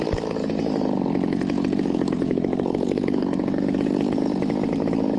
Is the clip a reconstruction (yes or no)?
yes